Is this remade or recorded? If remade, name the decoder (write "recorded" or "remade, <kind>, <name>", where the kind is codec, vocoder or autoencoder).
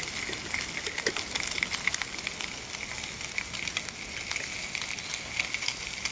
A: recorded